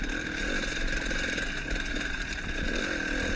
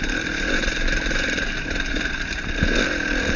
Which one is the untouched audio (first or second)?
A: first